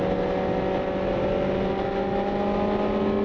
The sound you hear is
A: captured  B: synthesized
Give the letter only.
A